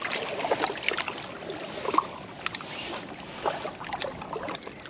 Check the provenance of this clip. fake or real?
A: real